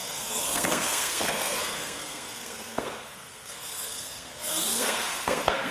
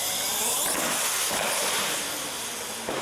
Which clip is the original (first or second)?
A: second